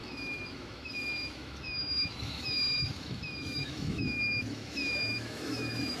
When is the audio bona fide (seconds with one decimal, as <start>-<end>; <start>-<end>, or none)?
none